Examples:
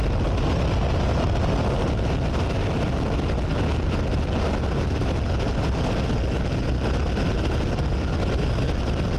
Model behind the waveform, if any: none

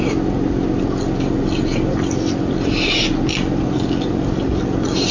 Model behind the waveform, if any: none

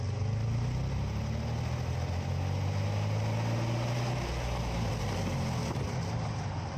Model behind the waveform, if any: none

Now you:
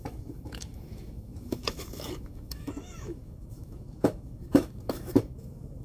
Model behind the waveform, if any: autoencoder, DAC-VAE